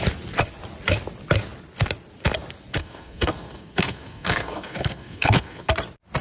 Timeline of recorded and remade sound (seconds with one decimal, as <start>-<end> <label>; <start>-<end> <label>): 0.0-2.8 recorded; 2.8-5.7 remade; 5.7-6.2 recorded